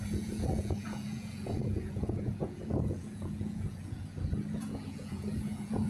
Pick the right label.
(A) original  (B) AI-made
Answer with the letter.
B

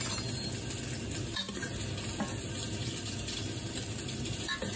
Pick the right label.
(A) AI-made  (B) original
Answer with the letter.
B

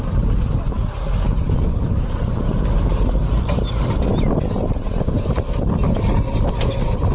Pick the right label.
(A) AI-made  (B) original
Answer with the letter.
B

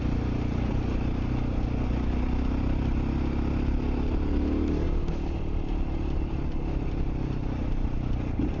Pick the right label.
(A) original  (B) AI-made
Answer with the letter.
A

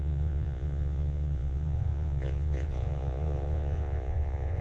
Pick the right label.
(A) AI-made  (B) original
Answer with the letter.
A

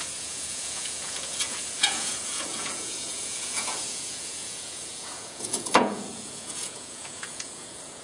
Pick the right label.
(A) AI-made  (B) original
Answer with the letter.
A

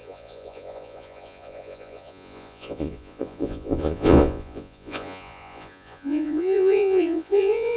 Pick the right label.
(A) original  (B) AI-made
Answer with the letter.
B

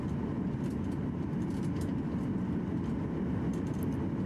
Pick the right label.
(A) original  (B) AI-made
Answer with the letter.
A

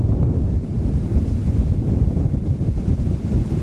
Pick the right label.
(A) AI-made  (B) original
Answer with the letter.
B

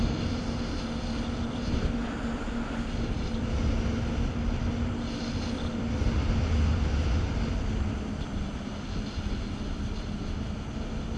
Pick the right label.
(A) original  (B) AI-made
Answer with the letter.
A